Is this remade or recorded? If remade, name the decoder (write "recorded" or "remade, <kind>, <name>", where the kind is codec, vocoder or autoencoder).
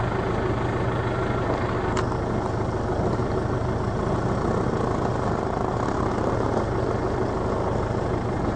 recorded